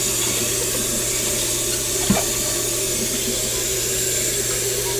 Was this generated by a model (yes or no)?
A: no